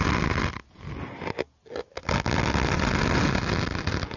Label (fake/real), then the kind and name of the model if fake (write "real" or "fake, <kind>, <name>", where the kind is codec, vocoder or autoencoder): real